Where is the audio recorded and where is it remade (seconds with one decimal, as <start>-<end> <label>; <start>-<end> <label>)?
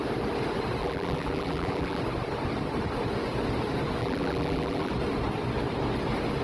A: 0.0-0.8 recorded; 0.8-2.0 remade; 2.0-4.0 recorded; 4.0-4.9 remade; 4.9-6.4 recorded